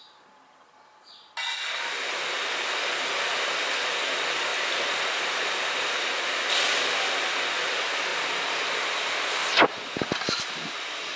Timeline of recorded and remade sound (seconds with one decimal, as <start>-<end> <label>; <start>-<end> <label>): 0.0-11.2 recorded